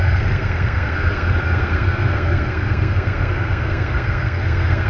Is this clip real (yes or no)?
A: no